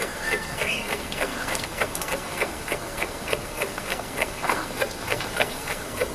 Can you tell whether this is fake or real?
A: fake